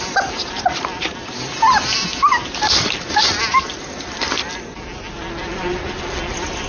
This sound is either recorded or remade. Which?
recorded